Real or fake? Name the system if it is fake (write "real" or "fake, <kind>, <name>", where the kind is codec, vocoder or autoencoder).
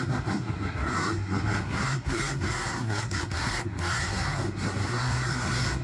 fake, codec, SNAC